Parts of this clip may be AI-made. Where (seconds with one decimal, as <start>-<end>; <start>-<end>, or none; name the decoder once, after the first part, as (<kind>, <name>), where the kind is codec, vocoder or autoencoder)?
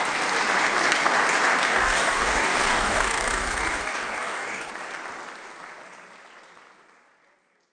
1.7-4.7 (codec, DAC)